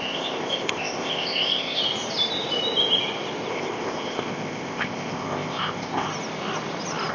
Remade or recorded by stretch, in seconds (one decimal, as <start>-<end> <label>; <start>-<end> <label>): 0.0-1.8 remade; 1.8-3.5 recorded; 3.5-6.1 remade; 6.1-7.1 recorded